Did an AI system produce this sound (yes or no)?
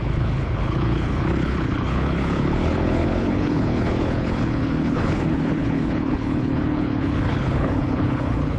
yes